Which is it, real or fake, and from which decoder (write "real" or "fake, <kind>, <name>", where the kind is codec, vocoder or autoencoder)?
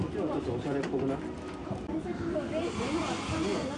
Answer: real